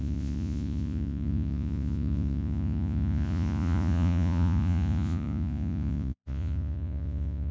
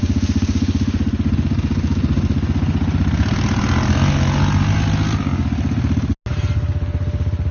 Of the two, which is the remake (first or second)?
first